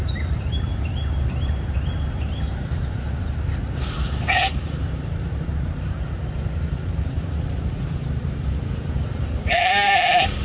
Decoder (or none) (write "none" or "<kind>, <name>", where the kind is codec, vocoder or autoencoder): vocoder, BigVGAN v2